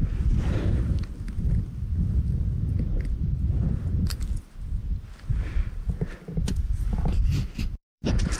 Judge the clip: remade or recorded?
remade